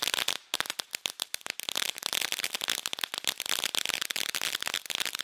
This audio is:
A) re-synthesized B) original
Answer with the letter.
B